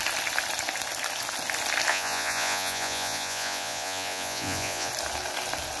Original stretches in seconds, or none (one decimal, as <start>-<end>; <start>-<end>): 0.0-1.9; 4.9-5.8